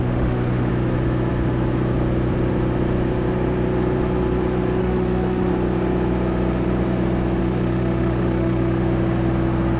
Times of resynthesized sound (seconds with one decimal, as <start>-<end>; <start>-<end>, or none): 0.0-0.7; 4.8-5.5; 7.4-8.8